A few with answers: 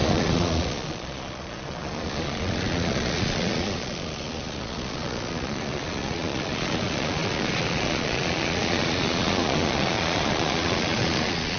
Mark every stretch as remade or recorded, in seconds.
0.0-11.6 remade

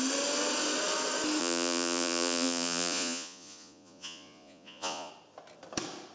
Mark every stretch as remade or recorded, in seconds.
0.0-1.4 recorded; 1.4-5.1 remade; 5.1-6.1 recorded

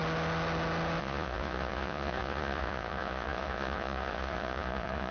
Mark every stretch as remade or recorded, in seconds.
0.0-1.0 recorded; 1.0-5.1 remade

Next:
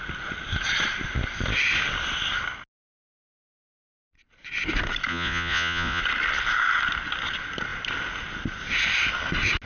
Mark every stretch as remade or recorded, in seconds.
0.0-5.1 recorded; 5.1-6.0 remade; 6.0-9.7 recorded

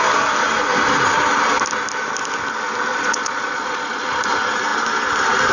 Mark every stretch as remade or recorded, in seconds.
0.0-2.9 recorded; 2.9-4.3 remade; 4.3-5.5 recorded